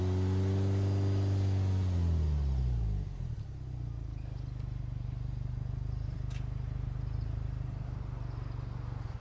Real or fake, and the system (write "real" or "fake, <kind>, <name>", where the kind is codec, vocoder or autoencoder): real